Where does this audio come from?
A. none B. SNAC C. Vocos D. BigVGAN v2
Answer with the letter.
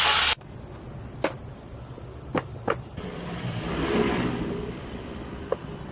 A